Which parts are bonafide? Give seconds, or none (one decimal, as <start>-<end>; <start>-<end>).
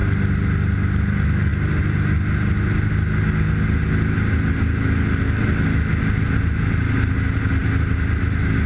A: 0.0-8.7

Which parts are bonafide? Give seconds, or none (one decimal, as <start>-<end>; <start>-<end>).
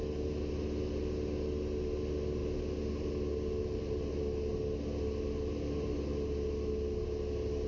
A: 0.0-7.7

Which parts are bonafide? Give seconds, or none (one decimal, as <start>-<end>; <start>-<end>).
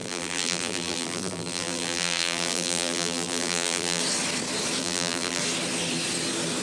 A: 4.0-4.8; 5.4-6.6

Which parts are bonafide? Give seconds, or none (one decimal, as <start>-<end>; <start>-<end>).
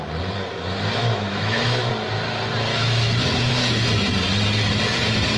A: 0.0-1.0; 1.9-2.7; 3.5-5.4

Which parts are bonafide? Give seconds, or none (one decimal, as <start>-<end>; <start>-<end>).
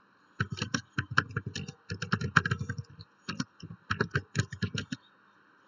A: 0.0-5.7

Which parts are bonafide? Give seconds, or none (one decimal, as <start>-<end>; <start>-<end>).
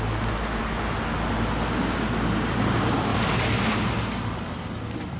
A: 0.0-5.2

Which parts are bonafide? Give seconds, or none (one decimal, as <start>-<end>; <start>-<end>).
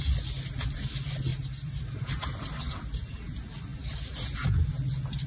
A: 0.0-5.3